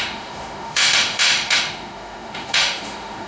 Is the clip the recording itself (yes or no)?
no